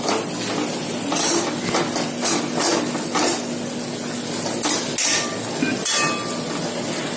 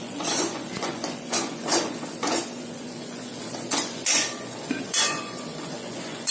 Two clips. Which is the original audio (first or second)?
first